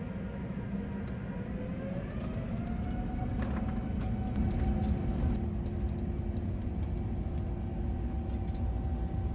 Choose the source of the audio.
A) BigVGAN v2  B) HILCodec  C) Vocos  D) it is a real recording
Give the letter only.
D